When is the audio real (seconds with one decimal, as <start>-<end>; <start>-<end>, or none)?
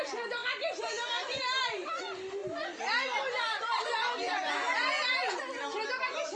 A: 0.0-6.4